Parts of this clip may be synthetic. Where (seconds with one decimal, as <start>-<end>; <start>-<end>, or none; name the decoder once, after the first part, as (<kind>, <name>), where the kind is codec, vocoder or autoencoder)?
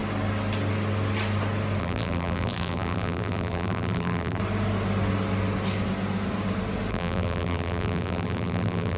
1.8-4.4 (vocoder, BigVGAN v2); 6.9-9.0